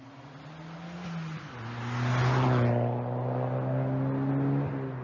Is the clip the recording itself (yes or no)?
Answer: yes